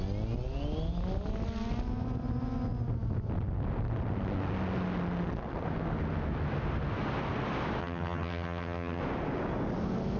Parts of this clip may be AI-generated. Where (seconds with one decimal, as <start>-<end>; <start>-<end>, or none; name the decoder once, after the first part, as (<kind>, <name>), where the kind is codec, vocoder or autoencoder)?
7.8-9.0 (vocoder, HiFi-GAN)